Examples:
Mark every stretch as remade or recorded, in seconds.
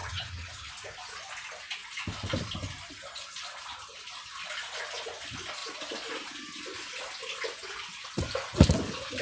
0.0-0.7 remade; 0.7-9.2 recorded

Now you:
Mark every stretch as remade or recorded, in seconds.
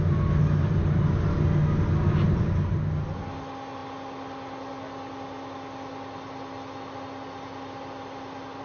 0.0-8.6 recorded